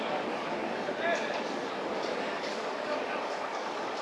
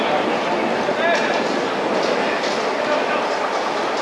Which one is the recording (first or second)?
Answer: second